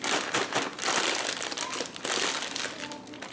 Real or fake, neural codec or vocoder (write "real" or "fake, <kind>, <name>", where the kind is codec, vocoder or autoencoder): fake, vocoder, BigVGAN v2